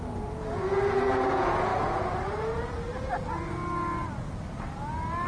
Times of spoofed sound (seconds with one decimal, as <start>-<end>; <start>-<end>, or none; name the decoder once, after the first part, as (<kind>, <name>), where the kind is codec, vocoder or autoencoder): 0.0-1.7 (vocoder, Vocos)